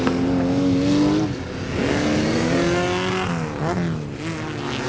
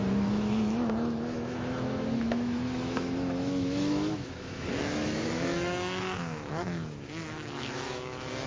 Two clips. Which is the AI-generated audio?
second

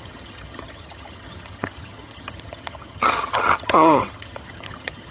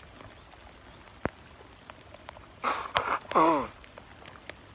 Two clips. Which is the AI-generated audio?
first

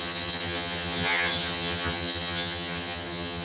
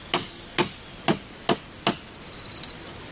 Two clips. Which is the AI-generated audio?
first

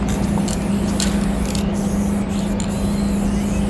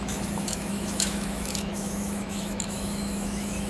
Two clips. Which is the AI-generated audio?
second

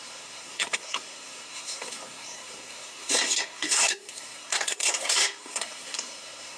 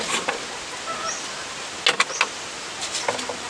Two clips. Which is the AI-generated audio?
first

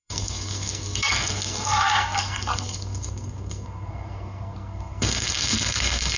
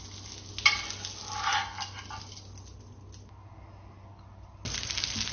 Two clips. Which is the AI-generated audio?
first